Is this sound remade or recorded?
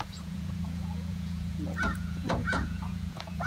remade